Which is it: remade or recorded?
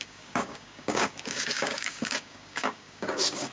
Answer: remade